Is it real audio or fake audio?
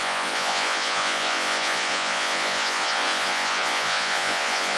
fake